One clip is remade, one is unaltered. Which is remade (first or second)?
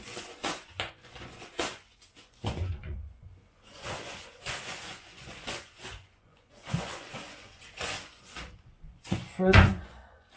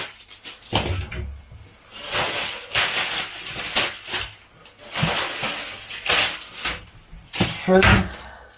first